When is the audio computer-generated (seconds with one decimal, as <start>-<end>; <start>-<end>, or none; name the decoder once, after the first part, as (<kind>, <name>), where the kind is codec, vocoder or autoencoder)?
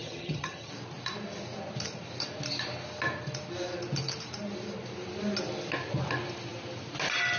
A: 0.0-0.7 (vocoder, HiFi-GAN)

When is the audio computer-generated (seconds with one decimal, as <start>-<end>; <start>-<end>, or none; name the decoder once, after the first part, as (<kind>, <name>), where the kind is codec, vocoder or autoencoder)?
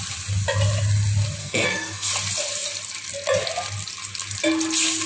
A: 1.4-2.1 (codec, SNAC)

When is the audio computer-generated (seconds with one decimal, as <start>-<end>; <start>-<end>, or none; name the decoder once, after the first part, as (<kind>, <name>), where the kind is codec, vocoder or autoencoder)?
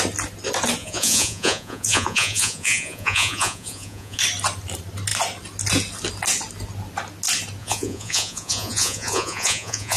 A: 0.8-4.2 (vocoder, Vocos); 7.6-10.0